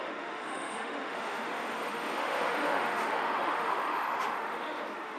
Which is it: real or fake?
fake